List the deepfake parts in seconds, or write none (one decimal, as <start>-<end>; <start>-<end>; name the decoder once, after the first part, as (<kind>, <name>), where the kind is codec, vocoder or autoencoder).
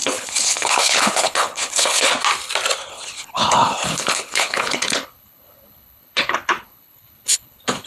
0.0-2.1 (codec, HILCodec); 2.9-7.9